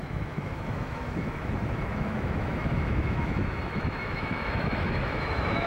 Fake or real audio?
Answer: fake